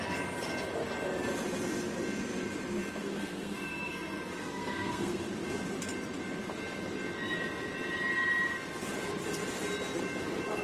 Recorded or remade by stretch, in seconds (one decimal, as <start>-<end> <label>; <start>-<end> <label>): 0.0-3.0 recorded; 3.0-5.2 remade; 5.2-10.6 recorded